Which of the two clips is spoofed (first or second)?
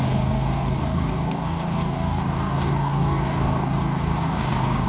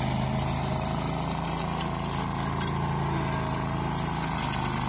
first